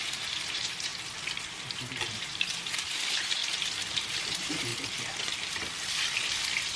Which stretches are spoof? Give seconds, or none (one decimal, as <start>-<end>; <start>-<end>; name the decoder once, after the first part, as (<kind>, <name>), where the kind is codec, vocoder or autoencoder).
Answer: 0.0-0.9 (vocoder, BigVGAN v2); 1.6-3.4; 4.2-4.7